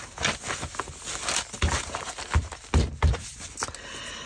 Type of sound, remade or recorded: recorded